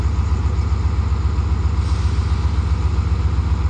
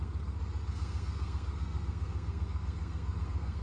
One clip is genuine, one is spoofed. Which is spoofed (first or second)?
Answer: second